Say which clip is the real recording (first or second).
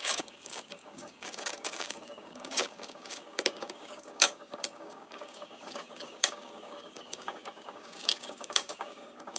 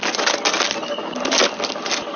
second